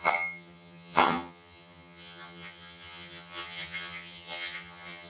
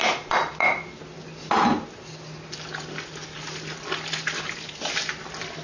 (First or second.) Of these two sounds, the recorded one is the second